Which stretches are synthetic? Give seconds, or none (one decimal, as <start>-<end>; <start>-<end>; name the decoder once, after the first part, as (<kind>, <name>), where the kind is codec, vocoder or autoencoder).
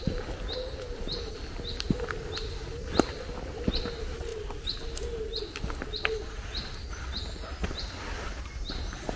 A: none